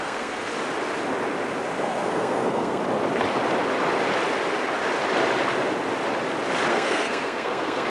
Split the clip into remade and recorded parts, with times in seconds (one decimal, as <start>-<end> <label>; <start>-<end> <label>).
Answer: 0.0-0.5 remade; 0.5-1.8 recorded; 1.8-2.8 remade; 2.8-6.7 recorded; 6.7-7.9 remade